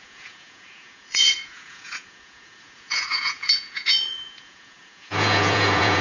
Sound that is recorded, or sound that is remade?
remade